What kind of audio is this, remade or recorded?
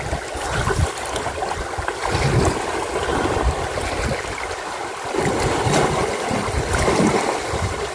recorded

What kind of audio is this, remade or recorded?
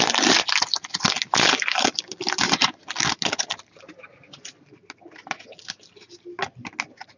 recorded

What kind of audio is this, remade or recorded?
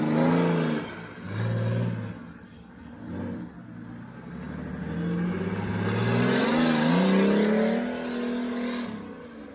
recorded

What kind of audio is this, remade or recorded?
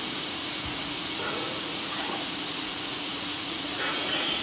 remade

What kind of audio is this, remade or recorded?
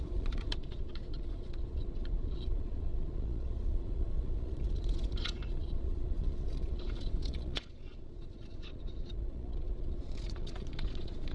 remade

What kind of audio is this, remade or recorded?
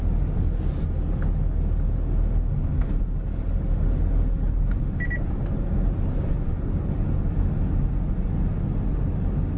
recorded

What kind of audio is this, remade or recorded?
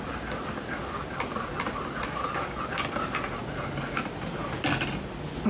recorded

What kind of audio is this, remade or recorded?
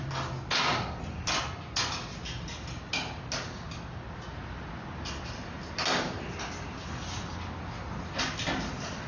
recorded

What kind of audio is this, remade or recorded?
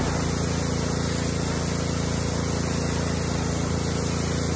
recorded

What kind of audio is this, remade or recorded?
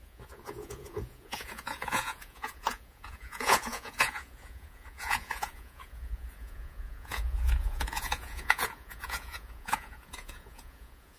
remade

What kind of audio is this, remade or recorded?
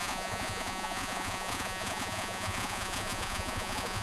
remade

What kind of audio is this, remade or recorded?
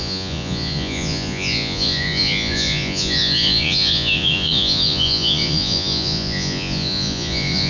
remade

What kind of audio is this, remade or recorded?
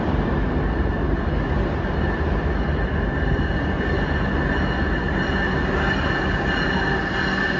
recorded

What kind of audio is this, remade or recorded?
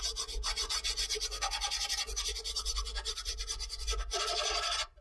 remade